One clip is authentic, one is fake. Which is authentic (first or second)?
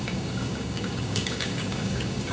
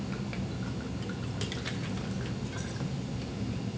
second